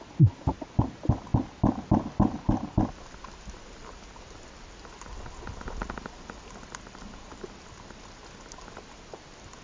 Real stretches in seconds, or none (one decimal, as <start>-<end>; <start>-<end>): 0.0-9.6